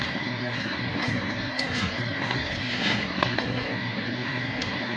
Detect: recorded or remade remade